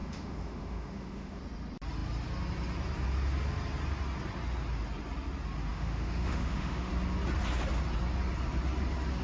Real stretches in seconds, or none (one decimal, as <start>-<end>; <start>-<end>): 1.4-5.7; 6.9-9.2

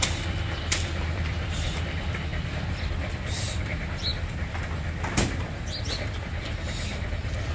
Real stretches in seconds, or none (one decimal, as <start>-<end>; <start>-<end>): 0.0-7.5